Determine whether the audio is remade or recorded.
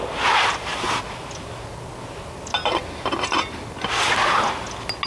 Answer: recorded